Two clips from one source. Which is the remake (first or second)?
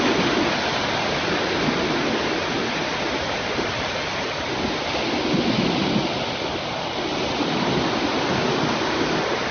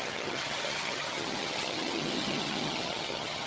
second